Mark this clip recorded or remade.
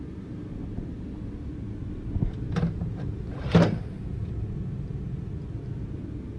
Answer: recorded